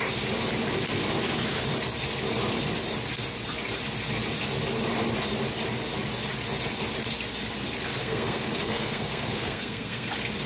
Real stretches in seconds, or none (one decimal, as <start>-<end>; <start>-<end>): 0.0-8.0; 10.1-10.5